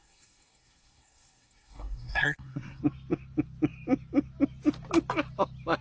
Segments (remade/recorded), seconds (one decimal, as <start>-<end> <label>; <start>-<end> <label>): 0.0-2.8 remade; 2.8-5.8 recorded